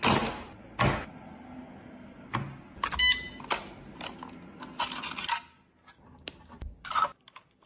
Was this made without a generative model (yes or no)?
yes